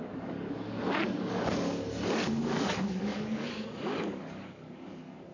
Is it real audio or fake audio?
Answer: fake